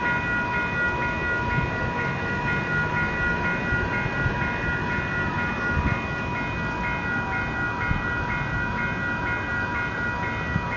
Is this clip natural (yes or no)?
yes